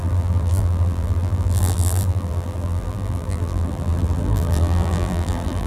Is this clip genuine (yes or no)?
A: no